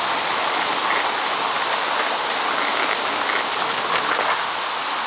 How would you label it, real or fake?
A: real